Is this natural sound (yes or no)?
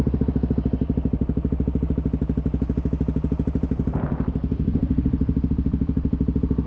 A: yes